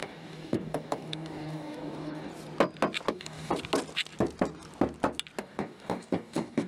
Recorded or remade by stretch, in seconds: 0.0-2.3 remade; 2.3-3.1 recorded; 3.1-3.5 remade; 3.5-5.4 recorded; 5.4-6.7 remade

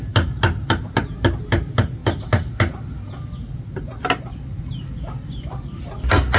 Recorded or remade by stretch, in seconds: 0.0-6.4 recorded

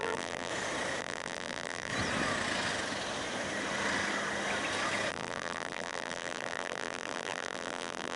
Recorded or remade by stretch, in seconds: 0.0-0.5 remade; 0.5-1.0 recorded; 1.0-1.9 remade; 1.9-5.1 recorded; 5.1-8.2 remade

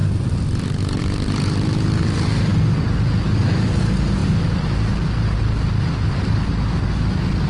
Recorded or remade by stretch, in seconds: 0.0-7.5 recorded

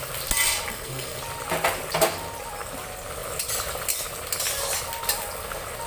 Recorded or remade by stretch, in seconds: 0.0-0.7 recorded; 0.7-1.2 remade; 1.2-5.9 recorded

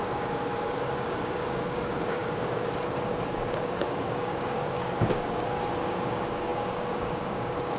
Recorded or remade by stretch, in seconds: 0.0-7.8 remade

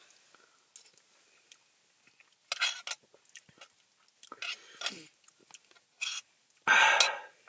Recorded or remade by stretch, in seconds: 0.0-7.5 recorded

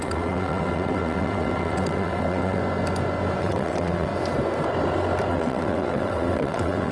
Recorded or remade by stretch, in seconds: 0.0-2.6 remade; 2.6-3.4 recorded; 3.4-4.1 remade; 4.1-5.3 recorded; 5.3-6.9 remade